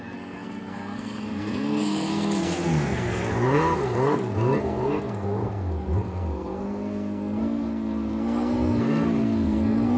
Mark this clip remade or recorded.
remade